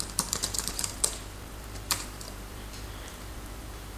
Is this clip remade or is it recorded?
remade